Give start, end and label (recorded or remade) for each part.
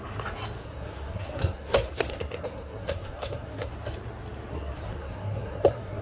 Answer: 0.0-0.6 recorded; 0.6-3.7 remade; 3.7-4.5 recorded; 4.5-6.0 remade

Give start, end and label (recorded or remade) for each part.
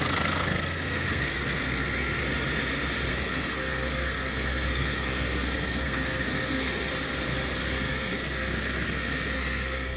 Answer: 0.0-2.2 remade; 2.2-3.1 recorded; 3.1-6.9 remade; 6.9-7.6 recorded; 7.6-10.0 remade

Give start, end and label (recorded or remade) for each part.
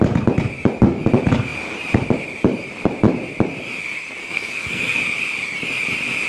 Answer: 0.0-4.2 recorded; 4.2-5.0 remade; 5.0-6.3 recorded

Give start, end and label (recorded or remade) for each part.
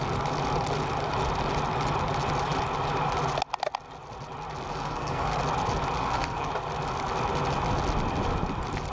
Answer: 0.0-4.7 recorded; 4.7-5.4 remade; 5.4-6.0 recorded; 6.0-6.5 remade; 6.5-8.9 recorded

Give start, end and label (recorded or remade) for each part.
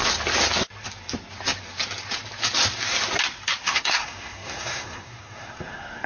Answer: 0.0-3.6 recorded; 3.6-6.1 remade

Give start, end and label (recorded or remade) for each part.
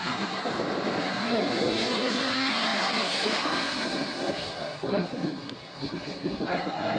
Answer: 0.0-0.5 remade; 0.5-1.0 recorded; 1.0-7.0 remade